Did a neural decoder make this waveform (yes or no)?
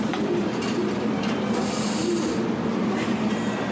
yes